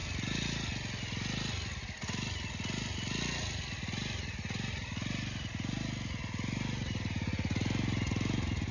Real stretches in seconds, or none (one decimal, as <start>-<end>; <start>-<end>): 0.0-8.7